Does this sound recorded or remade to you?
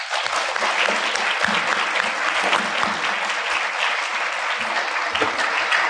recorded